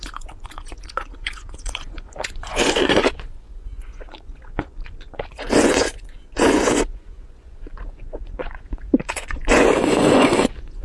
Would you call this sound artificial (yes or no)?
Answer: yes